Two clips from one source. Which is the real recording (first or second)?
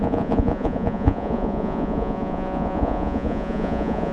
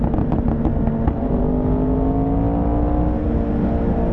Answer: second